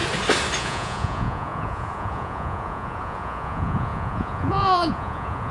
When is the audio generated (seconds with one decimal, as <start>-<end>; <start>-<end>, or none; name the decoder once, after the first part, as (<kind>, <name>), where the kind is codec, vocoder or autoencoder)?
0.6-5.5 (vocoder, Vocos)